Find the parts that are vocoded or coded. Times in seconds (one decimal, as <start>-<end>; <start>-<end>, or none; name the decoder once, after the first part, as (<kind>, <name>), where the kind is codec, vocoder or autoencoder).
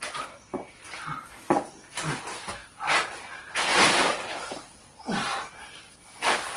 3.7-4.5 (vocoder, BigVGAN v2)